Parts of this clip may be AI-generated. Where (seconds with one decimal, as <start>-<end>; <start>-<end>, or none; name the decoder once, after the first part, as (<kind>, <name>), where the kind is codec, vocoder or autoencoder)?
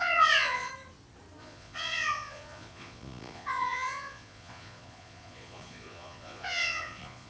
0.0-0.7 (vocoder, Vocos); 1.4-7.3